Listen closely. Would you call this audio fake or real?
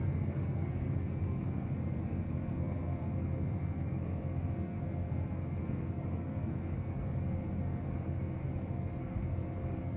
fake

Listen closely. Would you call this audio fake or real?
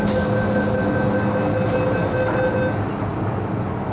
real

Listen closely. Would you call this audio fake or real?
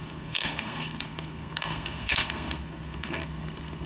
fake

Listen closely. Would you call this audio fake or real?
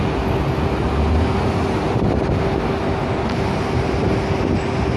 real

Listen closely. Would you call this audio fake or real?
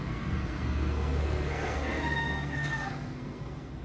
fake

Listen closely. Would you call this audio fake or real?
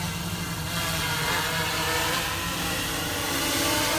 real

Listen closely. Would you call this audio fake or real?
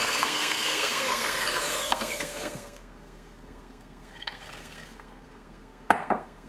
fake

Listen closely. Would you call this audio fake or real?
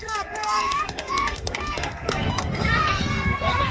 fake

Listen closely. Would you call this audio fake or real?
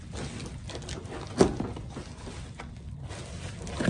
real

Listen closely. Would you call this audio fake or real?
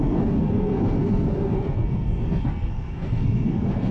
fake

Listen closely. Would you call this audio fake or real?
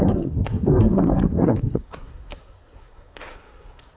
fake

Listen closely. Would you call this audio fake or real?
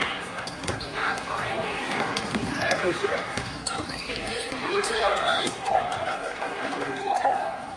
fake